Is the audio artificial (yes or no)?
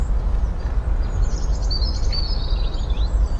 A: no